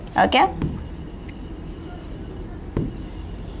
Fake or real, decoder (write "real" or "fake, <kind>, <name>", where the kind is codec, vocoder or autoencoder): real